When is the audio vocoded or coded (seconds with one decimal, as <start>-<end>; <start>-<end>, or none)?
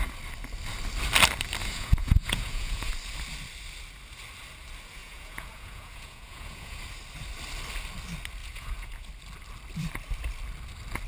1.6-2.9; 5.0-6.8; 8.4-9.1